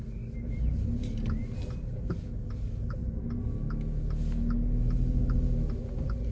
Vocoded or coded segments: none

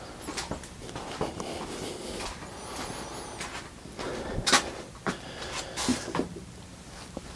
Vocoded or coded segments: none